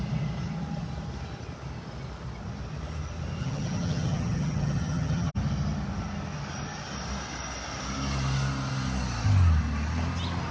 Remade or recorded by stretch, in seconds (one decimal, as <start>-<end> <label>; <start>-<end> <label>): 0.0-3.4 recorded; 3.4-5.3 remade; 5.3-10.5 recorded

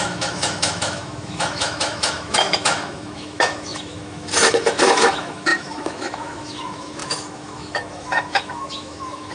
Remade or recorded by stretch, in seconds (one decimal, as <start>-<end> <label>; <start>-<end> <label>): 0.0-9.3 remade

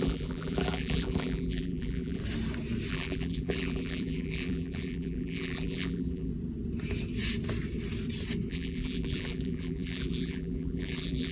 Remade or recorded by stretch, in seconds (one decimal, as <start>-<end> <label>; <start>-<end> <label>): 0.0-2.2 remade; 2.2-2.9 recorded; 2.9-6.3 remade; 6.3-8.5 recorded; 8.5-11.3 remade

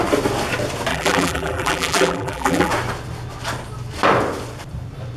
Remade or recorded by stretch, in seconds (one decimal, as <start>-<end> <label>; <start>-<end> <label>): 0.0-0.9 recorded; 0.9-2.7 remade; 2.7-5.2 recorded